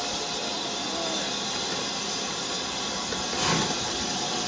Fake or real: real